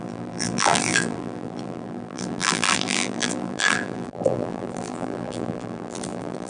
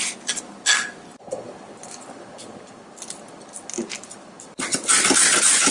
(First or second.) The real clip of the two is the second